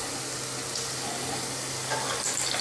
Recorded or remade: recorded